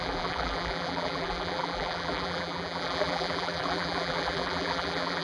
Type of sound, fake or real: fake